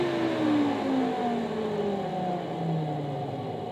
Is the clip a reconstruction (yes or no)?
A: no